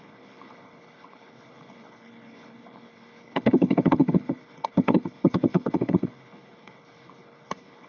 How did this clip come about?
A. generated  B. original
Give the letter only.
A